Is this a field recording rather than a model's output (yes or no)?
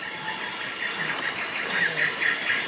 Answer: yes